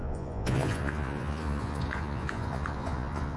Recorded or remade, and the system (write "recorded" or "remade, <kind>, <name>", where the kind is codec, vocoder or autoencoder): remade, vocoder, Vocos